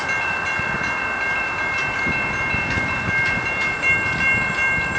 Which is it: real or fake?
real